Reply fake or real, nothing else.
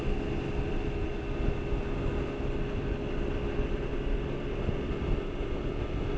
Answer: real